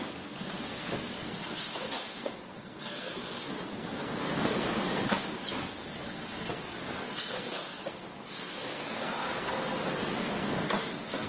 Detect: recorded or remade remade